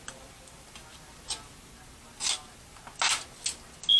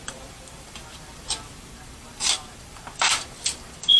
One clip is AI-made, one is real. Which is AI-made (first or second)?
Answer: second